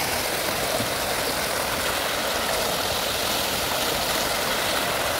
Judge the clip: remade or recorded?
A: recorded